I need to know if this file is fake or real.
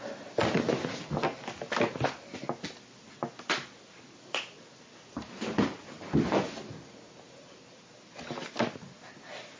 real